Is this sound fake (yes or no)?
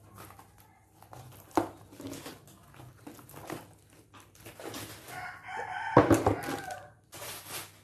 no